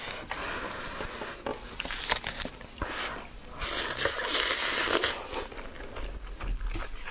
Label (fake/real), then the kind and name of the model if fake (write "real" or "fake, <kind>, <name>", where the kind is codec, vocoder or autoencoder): real